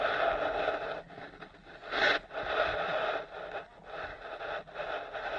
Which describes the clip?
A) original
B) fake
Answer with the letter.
A